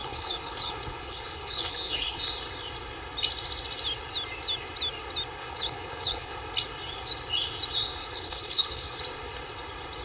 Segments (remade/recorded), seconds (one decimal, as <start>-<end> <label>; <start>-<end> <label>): 0.0-2.2 remade; 2.2-5.4 recorded; 5.4-6.4 remade; 6.4-8.0 recorded; 8.0-9.0 remade; 9.0-10.0 recorded